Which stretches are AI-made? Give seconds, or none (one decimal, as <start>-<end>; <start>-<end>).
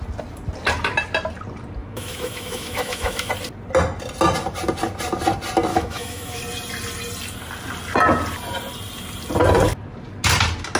1.8-3.3; 5.7-6.4